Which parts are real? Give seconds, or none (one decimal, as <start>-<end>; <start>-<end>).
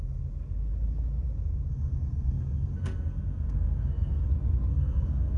0.0-1.7; 4.3-4.7